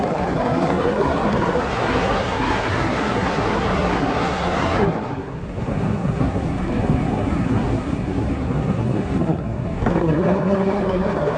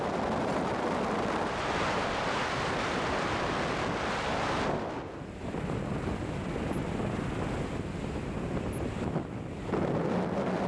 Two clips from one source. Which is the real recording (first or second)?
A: second